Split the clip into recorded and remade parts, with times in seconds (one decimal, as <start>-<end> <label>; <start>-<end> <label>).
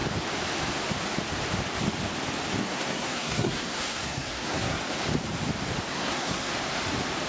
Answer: 0.0-2.6 recorded; 2.6-4.8 remade; 4.8-5.9 recorded; 5.9-6.5 remade; 6.5-7.3 recorded